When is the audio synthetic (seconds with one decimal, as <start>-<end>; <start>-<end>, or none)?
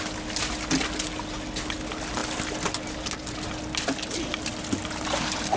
none